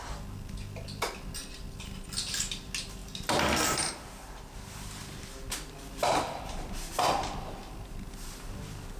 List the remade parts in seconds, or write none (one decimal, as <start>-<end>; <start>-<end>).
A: none